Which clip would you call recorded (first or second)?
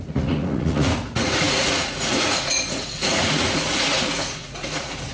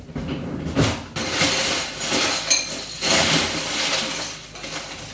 second